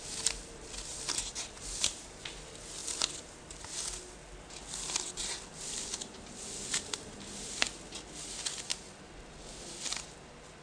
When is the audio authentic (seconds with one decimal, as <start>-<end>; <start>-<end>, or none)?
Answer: 0.0-2.8; 3.4-5.5; 7.6-10.6